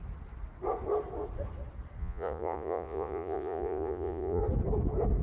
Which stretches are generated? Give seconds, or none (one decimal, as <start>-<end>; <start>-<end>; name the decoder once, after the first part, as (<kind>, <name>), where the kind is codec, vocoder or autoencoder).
2.0-4.4 (vocoder, Vocos)